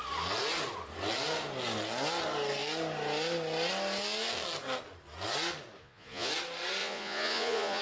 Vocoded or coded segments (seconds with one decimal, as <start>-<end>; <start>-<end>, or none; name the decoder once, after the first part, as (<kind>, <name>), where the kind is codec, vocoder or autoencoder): 5.8-6.3 (vocoder, Vocos); 6.8-7.8